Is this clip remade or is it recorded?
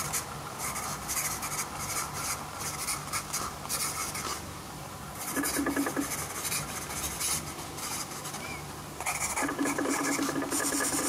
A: recorded